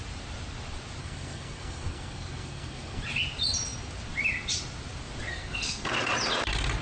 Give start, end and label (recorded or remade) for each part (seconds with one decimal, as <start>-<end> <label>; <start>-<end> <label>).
0.0-1.0 recorded; 1.0-3.0 remade; 3.0-5.3 recorded; 5.3-5.9 remade; 5.9-6.8 recorded